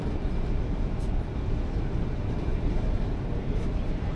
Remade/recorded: recorded